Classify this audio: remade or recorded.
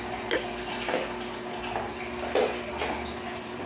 recorded